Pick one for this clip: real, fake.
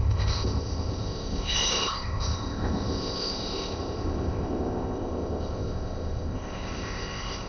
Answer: fake